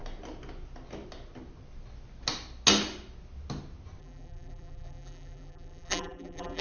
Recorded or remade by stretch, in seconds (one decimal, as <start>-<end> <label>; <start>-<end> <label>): 0.0-4.0 recorded; 4.0-6.6 remade